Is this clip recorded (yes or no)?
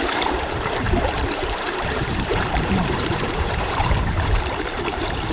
no